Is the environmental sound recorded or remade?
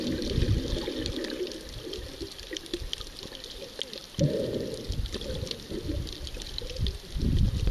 recorded